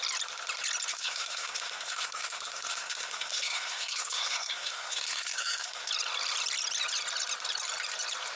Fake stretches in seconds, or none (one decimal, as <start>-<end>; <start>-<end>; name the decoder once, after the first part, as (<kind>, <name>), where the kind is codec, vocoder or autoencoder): 0.9-5.9 (codec, SNAC)